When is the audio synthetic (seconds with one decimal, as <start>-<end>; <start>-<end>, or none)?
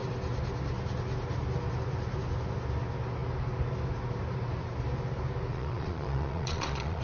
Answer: 5.5-7.0